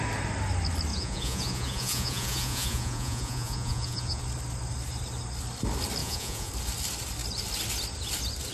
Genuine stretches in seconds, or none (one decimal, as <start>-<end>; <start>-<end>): 0.0-0.9; 4.2-6.0; 6.5-8.5